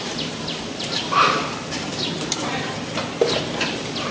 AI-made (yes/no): yes